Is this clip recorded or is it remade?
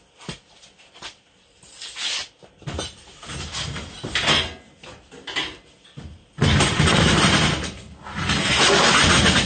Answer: recorded